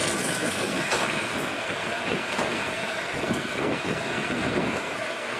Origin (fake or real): fake